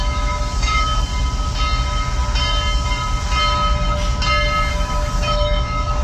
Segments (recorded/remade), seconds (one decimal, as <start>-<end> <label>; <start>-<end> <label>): 0.0-1.1 remade; 1.1-4.7 recorded; 4.7-6.0 remade